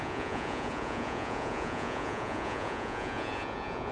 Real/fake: fake